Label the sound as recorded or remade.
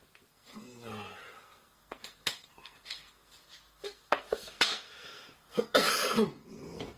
remade